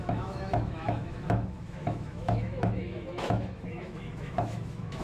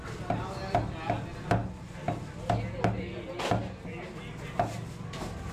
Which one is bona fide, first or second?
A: second